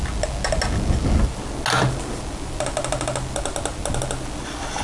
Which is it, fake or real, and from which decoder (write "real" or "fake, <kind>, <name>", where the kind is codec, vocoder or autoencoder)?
real